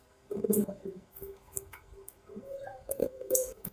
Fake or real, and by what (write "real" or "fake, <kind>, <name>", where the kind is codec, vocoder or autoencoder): fake, codec, SNAC